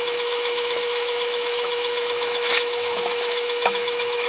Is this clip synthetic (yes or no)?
yes